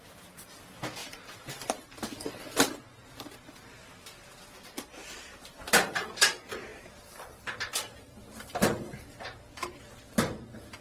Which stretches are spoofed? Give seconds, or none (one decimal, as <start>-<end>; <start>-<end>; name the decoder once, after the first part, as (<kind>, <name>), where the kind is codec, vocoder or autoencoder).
0.0-10.8 (vocoder, BigVGAN v2)